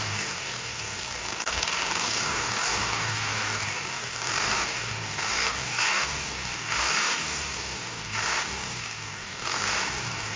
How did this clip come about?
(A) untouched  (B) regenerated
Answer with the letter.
B